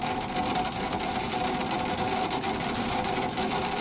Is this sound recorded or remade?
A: remade